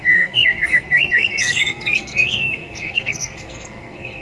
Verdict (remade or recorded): remade